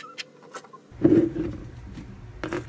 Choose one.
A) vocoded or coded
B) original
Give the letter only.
B